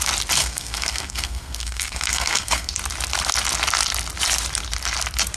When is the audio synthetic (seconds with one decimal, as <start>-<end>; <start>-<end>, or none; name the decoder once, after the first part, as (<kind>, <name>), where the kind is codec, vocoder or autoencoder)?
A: 0.4-2.7 (codec, SNAC)